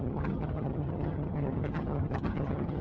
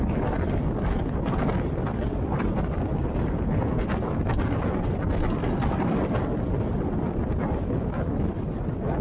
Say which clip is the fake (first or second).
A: first